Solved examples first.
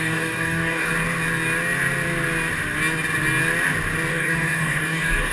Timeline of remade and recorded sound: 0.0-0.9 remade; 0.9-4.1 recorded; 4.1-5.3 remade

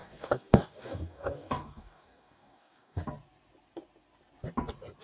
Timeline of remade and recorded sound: 0.0-3.0 remade; 3.0-5.0 recorded

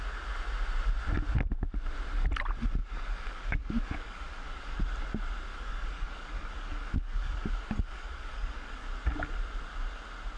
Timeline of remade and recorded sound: 0.0-2.8 recorded; 2.8-4.8 remade; 4.8-5.5 recorded; 5.5-8.9 remade; 8.9-10.4 recorded

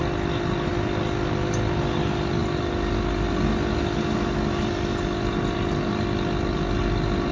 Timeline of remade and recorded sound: 0.0-7.3 recorded

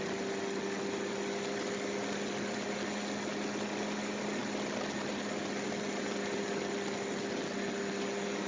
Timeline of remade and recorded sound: 0.0-8.5 recorded

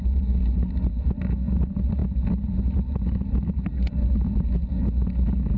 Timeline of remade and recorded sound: 0.0-5.6 recorded

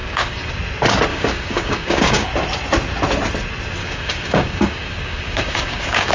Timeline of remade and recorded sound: 0.0-0.5 remade; 0.5-1.1 recorded; 1.1-2.3 remade; 2.3-3.8 recorded; 3.8-6.1 remade

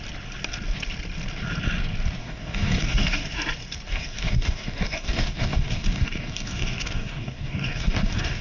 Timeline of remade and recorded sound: 0.0-2.2 recorded; 2.2-3.3 remade; 3.3-3.9 recorded; 3.9-8.4 remade